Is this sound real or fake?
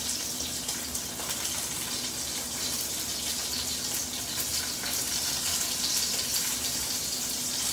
real